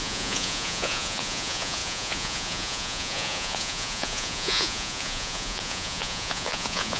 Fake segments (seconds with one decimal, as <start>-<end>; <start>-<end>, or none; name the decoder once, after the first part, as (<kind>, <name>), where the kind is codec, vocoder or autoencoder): 0.0-7.0 (vocoder, Vocos)